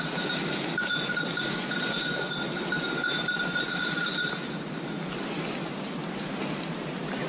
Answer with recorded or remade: recorded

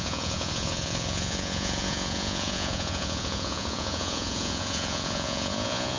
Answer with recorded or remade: remade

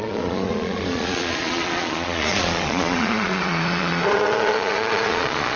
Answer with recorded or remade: remade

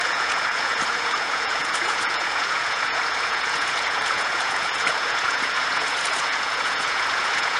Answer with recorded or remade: remade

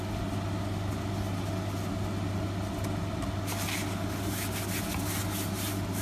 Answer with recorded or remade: recorded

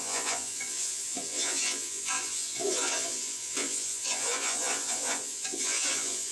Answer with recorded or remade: remade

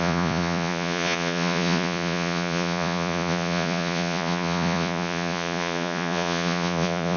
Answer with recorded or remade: remade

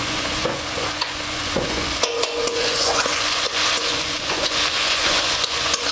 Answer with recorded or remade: remade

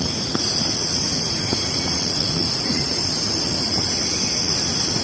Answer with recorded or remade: remade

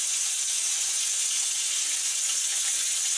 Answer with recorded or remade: remade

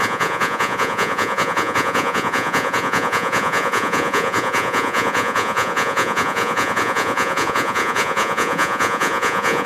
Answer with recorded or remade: remade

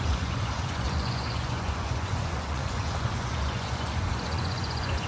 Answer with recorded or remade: remade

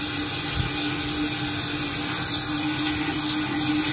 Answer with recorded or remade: recorded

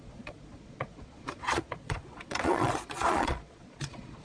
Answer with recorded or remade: remade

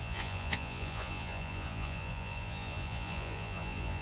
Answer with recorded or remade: remade